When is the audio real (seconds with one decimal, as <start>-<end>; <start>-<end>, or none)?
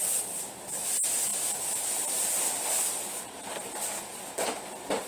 0.0-5.1